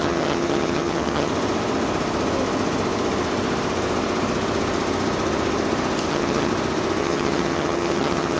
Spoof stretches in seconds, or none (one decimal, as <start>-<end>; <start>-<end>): 0.0-1.3; 6.1-6.5; 7.0-8.4